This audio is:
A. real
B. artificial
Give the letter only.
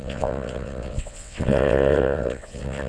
B